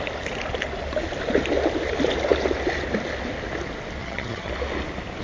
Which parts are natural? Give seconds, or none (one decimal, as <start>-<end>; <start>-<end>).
0.0-4.0; 4.5-5.2